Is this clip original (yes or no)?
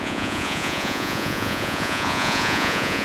no